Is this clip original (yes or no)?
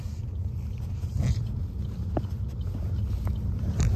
yes